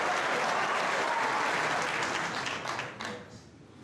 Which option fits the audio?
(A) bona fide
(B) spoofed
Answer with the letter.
A